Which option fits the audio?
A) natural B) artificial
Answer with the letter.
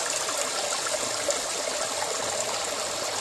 A